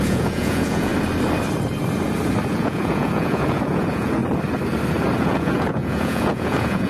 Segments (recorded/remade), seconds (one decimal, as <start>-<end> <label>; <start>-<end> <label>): 0.0-0.9 remade; 0.9-2.5 recorded; 2.5-4.2 remade; 4.2-5.2 recorded; 5.2-6.9 remade